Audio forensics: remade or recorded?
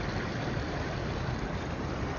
remade